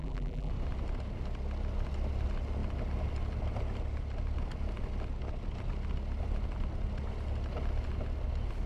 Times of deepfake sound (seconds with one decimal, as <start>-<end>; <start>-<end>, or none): 0.0-0.5